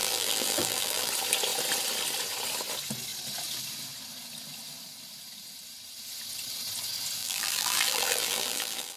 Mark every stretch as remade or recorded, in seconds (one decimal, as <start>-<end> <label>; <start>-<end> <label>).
0.0-1.1 remade; 1.1-7.2 recorded; 7.2-9.0 remade